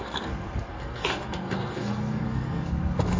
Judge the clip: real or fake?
fake